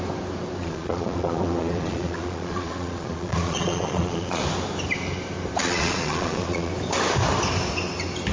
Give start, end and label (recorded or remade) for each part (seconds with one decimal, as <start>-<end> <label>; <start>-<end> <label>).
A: 0.0-0.6 recorded; 0.6-4.4 remade; 4.4-5.6 recorded; 5.6-6.7 remade; 6.7-8.3 recorded